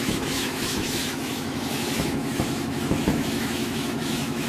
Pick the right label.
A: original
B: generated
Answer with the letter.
B